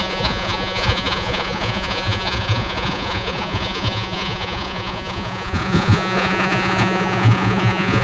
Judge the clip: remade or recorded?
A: remade